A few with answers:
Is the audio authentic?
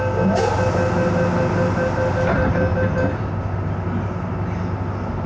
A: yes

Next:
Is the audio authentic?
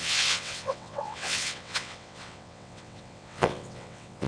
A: no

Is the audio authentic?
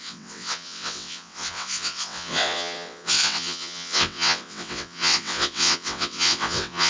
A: no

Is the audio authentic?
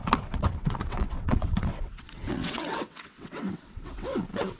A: no